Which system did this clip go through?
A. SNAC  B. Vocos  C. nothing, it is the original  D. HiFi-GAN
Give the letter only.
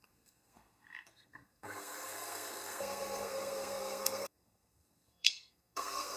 A